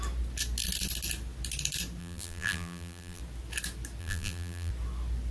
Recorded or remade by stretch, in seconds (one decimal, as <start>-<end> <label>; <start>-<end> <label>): 0.0-2.0 recorded; 2.0-3.2 remade; 3.2-4.0 recorded; 4.0-4.7 remade; 4.7-5.3 recorded